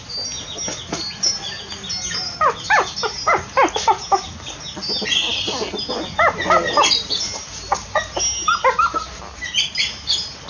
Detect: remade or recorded recorded